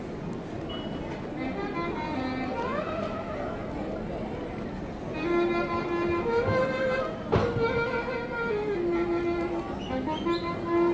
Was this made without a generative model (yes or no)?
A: yes